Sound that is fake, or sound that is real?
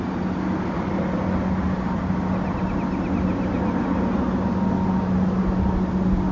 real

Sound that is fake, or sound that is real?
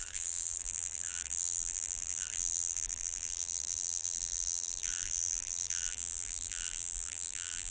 fake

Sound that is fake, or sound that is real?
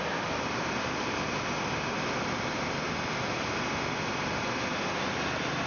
fake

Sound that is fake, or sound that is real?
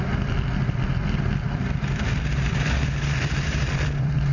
fake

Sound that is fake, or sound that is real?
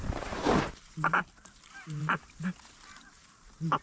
fake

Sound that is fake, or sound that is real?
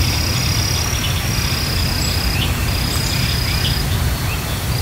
real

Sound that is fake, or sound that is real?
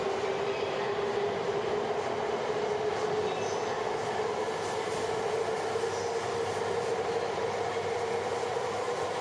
real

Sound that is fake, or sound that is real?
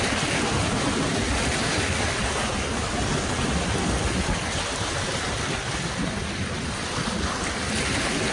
real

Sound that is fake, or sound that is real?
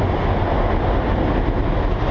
real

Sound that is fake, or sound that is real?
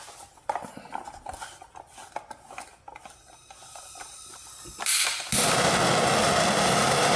real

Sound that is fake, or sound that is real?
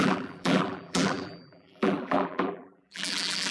fake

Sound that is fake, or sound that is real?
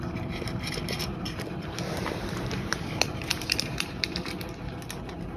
fake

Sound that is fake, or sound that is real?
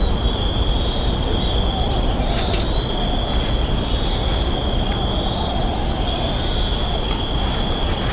real